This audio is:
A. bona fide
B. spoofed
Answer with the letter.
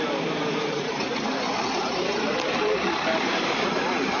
B